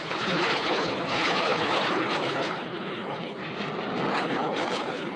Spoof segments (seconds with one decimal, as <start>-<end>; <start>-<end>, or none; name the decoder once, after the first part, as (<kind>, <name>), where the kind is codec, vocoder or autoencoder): 0.0-3.4 (codec, HILCodec); 4.1-5.2